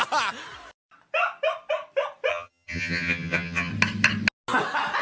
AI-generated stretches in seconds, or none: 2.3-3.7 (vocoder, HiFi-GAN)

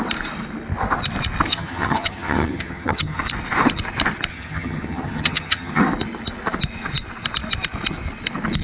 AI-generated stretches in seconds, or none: 1.5-3.2 (vocoder, HiFi-GAN); 4.3-5.8

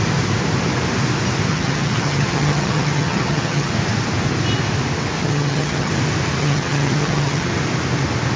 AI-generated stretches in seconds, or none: 1.5-3.7 (vocoder, HiFi-GAN); 5.2-5.9; 6.4-7.5

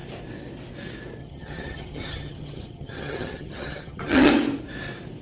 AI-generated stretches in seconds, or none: 1.2-4.3 (vocoder, HiFi-GAN)

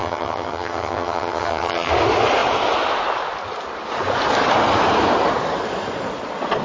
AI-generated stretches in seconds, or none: 0.0-1.9 (vocoder, HiFi-GAN)

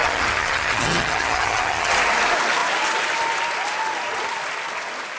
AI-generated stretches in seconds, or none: 0.0-1.9 (vocoder, HiFi-GAN)